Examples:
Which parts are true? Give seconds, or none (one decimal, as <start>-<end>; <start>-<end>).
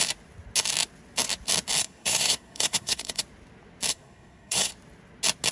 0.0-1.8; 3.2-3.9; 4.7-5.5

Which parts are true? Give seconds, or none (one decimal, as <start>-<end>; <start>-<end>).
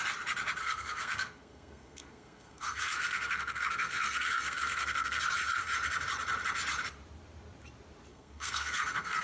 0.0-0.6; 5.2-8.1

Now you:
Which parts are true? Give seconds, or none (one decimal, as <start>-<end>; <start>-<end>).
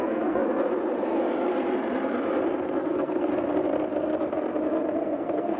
0.4-2.8; 3.3-5.0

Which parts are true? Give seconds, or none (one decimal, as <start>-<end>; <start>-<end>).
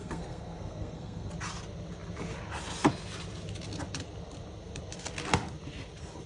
1.3-6.3